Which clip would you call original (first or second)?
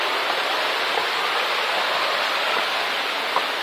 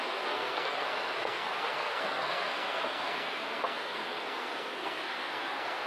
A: first